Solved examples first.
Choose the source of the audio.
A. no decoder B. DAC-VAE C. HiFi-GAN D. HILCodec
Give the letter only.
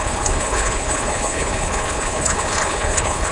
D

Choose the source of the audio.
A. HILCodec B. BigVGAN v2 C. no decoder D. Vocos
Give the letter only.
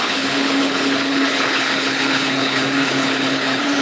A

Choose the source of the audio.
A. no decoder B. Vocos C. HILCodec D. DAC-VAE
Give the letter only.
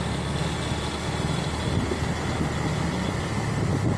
A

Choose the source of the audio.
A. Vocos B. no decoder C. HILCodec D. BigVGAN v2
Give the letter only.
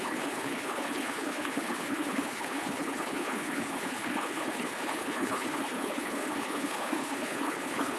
C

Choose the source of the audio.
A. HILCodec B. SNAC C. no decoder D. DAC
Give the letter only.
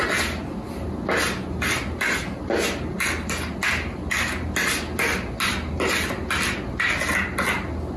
C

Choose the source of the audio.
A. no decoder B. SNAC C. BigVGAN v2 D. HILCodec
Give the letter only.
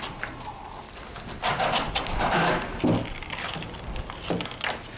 A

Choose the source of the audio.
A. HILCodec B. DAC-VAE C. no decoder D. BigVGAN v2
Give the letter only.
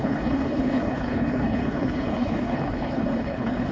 A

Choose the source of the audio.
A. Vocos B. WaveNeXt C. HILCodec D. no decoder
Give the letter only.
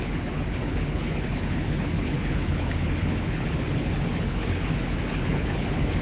C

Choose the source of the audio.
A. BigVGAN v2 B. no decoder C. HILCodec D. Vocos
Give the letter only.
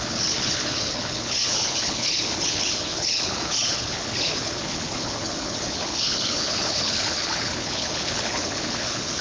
C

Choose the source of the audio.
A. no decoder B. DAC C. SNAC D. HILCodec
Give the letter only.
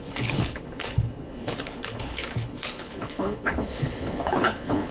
D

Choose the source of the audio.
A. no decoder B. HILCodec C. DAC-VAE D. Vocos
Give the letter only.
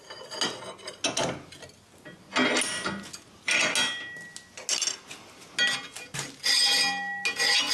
A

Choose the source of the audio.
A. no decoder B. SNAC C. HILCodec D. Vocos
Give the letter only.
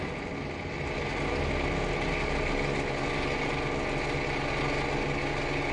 A